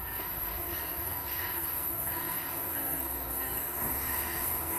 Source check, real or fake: fake